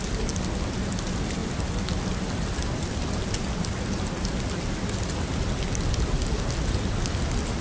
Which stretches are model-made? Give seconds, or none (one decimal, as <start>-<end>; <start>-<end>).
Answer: none